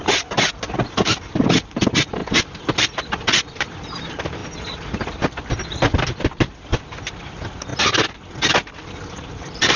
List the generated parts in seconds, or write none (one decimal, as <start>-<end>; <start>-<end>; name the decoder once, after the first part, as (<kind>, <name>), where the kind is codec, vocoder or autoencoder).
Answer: 0.0-2.2 (vocoder, BigVGAN v2); 2.8-4.4; 6.8-7.7; 9.1-9.8